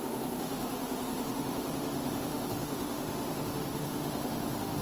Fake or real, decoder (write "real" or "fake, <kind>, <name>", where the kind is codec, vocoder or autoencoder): fake, autoencoder, DAC-VAE